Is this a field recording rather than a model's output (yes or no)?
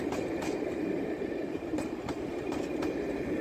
no